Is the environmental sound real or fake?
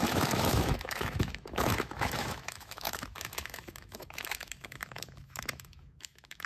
fake